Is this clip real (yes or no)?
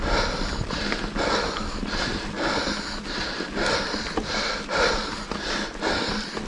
yes